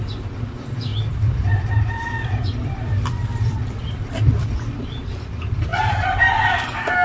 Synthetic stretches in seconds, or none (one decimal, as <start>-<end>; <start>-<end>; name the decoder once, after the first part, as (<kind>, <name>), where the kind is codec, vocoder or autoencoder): 0.9-4.5 (vocoder, BigVGAN v2); 5.7-6.6